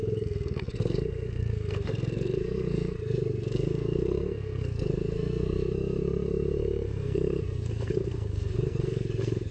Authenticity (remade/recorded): remade